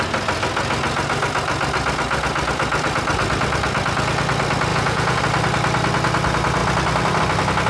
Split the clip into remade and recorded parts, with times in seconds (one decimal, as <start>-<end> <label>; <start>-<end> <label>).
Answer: 0.0-4.7 recorded; 4.7-5.2 remade; 5.2-7.7 recorded